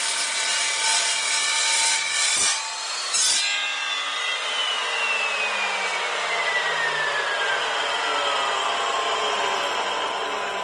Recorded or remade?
recorded